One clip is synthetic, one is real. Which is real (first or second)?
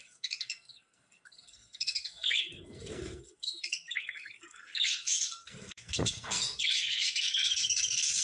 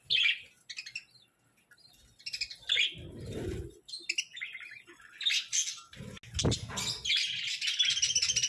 second